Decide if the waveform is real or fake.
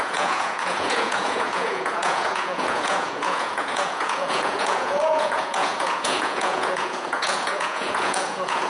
fake